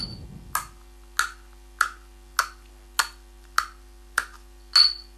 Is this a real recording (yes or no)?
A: yes